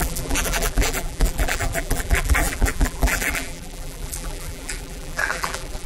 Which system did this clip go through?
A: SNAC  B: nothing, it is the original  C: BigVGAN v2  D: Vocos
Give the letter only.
C